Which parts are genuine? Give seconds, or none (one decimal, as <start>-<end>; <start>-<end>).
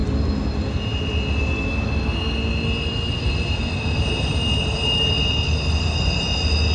0.0-6.7